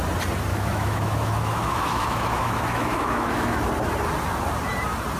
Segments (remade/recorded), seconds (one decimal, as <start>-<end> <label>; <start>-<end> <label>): 0.0-0.5 recorded; 0.5-3.6 remade; 3.6-5.2 recorded